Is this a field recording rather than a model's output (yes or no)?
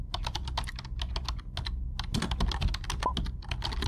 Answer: yes